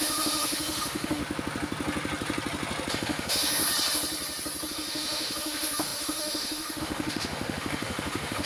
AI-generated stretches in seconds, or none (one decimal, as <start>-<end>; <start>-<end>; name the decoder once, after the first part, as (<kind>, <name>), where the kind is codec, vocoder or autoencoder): 0.0-1.2 (autoencoder, DAC-VAE); 2.9-3.6; 4.7-8.5

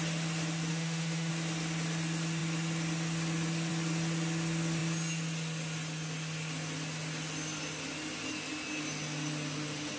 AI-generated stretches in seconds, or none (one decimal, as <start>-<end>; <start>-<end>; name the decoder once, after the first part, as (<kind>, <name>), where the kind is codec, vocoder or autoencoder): 0.7-1.3 (autoencoder, DAC-VAE)